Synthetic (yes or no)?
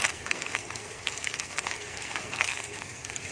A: yes